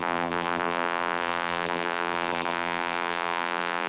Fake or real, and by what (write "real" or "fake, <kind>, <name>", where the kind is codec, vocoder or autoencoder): fake, vocoder, BigVGAN v2